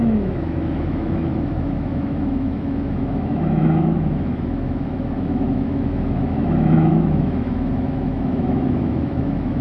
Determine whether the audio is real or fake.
fake